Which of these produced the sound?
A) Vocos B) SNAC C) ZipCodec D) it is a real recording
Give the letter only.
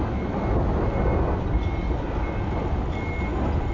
D